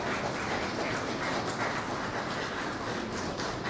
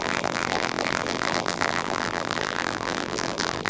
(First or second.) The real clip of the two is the first